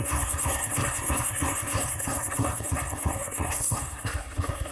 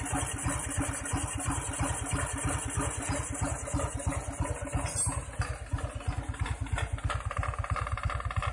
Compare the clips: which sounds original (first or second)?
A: second